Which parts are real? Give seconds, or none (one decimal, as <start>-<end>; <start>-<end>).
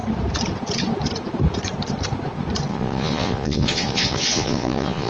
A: 0.0-2.7